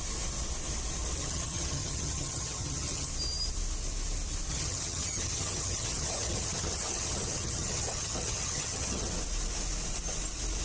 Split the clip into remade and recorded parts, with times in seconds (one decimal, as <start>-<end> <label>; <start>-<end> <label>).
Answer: 0.0-1.2 recorded; 1.2-3.1 remade; 3.1-4.5 recorded; 4.5-9.1 remade; 9.1-10.6 recorded